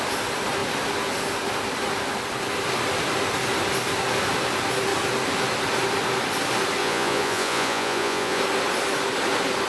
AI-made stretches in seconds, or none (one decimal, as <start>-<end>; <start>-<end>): 6.8-8.4